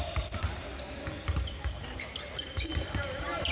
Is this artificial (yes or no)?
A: no